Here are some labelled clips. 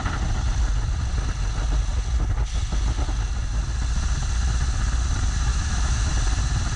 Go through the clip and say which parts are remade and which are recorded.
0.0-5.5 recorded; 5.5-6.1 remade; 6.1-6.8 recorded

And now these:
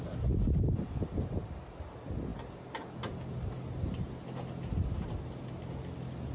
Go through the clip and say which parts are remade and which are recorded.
0.0-6.3 recorded

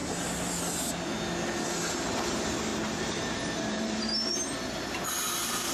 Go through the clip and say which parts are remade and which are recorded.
0.0-2.7 recorded; 2.7-5.1 remade; 5.1-5.7 recorded

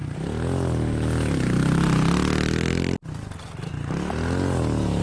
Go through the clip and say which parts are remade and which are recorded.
0.0-5.0 recorded

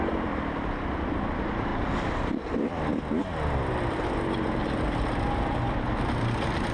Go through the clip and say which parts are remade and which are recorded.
0.0-6.7 remade